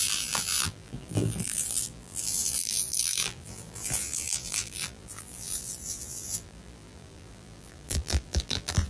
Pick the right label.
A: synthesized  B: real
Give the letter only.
A